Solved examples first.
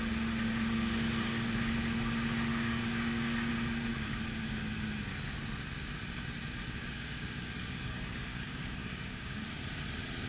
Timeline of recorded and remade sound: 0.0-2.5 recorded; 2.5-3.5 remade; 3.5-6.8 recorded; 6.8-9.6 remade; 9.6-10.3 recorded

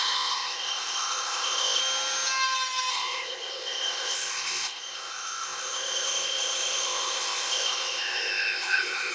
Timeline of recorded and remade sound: 0.0-1.8 remade; 1.8-2.9 recorded; 2.9-9.1 remade

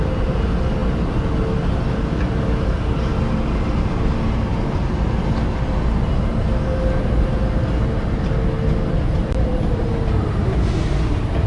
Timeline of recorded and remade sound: 0.0-11.5 recorded